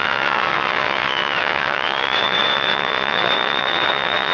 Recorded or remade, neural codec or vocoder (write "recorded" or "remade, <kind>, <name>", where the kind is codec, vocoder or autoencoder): remade, vocoder, WaveNeXt